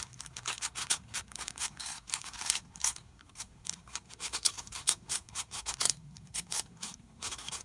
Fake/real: fake